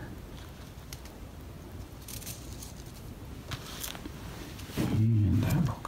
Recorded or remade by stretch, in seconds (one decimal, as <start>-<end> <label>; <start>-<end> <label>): 0.0-3.5 remade; 3.5-5.9 recorded